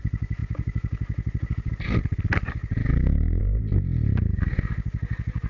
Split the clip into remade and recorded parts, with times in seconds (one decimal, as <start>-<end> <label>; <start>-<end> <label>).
0.0-2.8 recorded; 2.8-3.4 remade; 3.4-5.5 recorded